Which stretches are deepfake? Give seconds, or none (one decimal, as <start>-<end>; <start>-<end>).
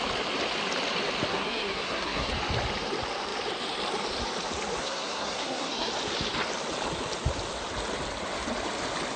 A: 1.3-2.3; 4.8-5.9